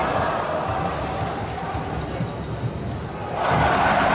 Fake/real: real